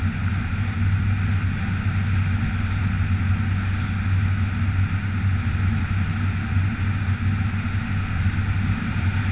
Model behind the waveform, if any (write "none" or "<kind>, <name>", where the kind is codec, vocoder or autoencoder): none